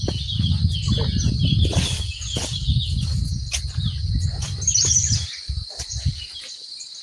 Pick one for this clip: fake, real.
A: real